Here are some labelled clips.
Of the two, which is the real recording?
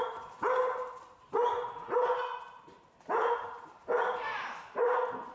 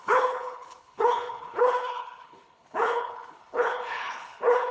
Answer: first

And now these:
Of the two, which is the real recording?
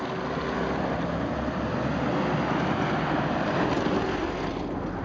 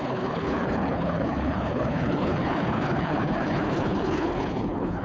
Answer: first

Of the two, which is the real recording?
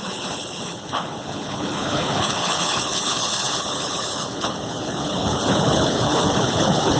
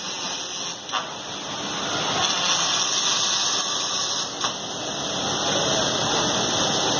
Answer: second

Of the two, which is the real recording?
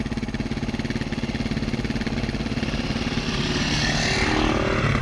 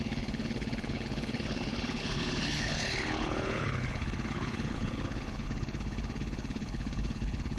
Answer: first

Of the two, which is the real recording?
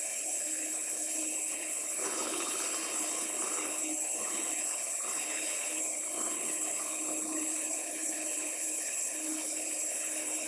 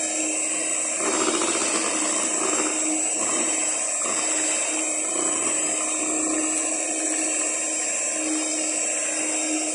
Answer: second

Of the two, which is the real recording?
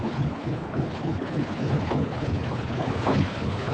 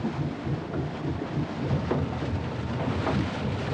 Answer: second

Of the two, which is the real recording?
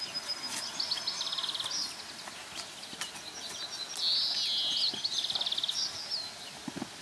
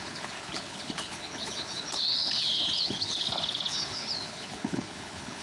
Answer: first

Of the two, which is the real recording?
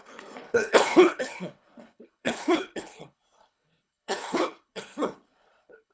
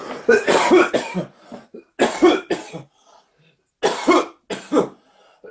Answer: second